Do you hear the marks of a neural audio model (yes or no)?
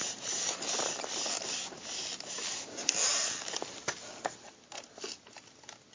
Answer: no